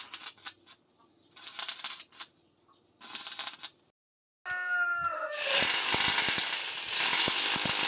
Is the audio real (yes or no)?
yes